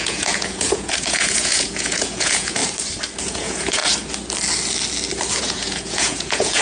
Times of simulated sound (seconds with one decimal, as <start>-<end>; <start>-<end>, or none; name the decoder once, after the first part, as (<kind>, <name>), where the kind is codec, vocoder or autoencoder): 0.0-2.6 (vocoder, Vocos); 3.2-3.8; 5.4-6.6